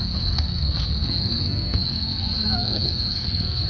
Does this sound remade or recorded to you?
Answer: remade